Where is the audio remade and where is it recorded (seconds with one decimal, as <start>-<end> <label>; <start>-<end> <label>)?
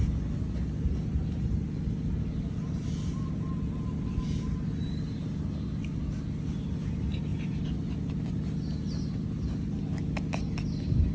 0.0-11.1 recorded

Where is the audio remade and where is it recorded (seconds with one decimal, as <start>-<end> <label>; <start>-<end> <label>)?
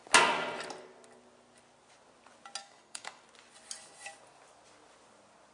0.0-2.6 recorded; 2.6-3.2 remade; 3.2-5.5 recorded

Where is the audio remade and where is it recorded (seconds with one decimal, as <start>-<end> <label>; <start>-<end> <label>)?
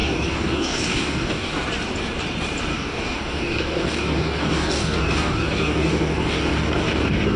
0.0-1.5 remade; 1.5-2.7 recorded; 2.7-7.4 remade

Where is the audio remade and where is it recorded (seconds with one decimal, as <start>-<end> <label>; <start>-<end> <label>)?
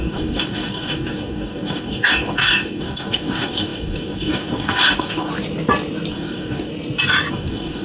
0.0-5.3 remade; 5.3-6.1 recorded; 6.1-6.7 remade; 6.7-7.3 recorded; 7.3-7.8 remade